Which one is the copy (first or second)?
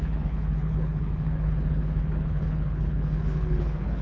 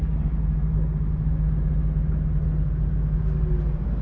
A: first